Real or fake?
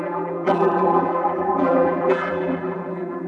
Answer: fake